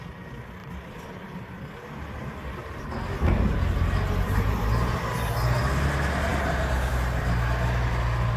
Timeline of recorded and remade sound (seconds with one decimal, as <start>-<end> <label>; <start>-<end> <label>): 0.0-8.4 recorded